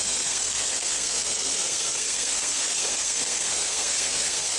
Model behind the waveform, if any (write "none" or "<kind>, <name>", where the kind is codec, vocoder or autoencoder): codec, SNAC